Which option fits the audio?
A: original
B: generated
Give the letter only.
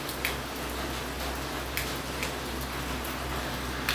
A